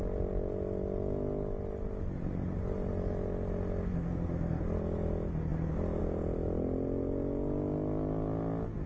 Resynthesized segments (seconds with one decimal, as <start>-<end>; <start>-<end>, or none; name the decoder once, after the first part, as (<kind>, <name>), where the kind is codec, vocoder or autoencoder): 3.9-4.6 (codec, SNAC)